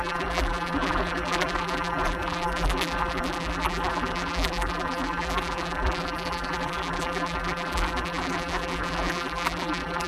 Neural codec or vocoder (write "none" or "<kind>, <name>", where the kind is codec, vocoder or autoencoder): vocoder, BigVGAN v2